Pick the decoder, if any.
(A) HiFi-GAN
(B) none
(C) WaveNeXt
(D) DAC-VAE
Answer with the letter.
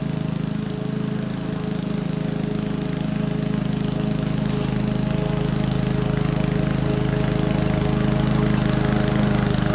B